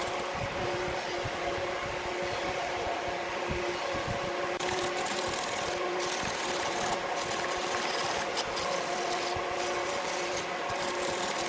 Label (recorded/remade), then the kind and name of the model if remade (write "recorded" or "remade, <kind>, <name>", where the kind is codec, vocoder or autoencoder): recorded